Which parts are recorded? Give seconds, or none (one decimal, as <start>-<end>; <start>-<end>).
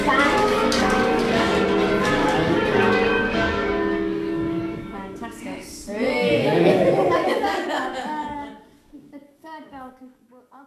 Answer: 1.5-2.0